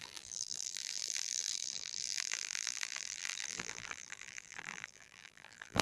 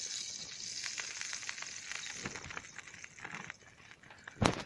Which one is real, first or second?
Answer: second